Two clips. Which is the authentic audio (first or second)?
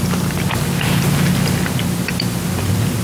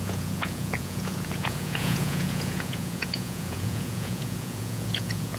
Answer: first